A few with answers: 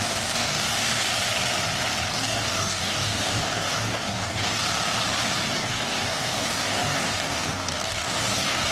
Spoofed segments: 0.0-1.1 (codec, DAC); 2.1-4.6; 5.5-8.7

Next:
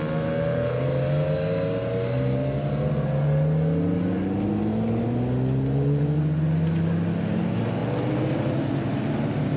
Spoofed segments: none

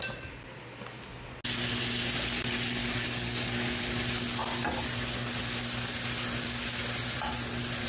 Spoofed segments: 2.8-4.0 (codec, DAC)

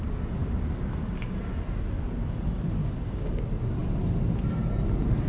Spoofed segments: 2.8-3.4 (codec, DAC)

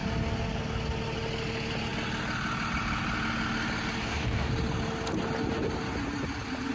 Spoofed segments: 4.0-4.5 (codec, DAC)